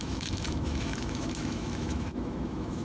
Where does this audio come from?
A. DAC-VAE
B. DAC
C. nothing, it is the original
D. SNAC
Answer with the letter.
A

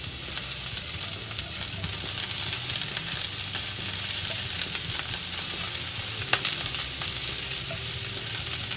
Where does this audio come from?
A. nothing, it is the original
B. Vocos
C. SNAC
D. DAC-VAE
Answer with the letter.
A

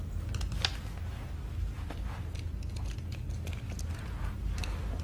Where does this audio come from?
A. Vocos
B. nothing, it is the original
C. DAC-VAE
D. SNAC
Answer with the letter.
B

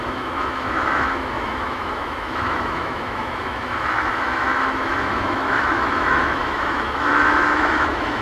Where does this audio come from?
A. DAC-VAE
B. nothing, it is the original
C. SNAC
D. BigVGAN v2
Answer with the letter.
A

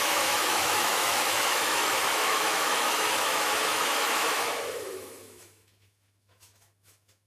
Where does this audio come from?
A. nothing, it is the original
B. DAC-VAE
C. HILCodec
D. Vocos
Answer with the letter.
B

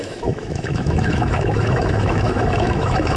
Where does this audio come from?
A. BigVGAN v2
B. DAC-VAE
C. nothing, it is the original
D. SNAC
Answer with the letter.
B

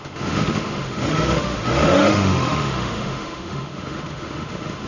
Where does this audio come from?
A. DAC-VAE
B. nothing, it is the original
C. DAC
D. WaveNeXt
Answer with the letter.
A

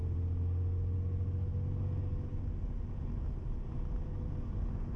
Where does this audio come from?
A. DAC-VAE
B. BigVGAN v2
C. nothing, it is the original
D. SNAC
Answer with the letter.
C